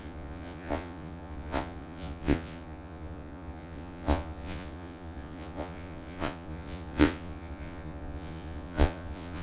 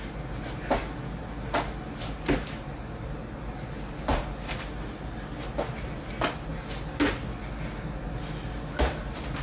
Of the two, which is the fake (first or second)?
first